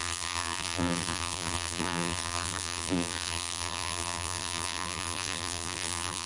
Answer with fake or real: fake